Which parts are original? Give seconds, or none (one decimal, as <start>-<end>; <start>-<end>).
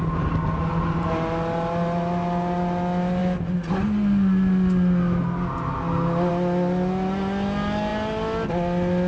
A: 0.0-9.1